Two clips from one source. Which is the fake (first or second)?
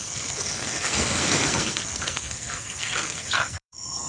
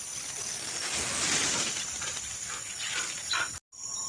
first